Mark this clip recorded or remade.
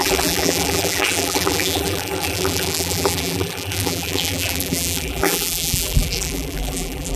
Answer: remade